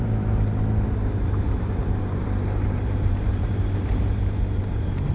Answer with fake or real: fake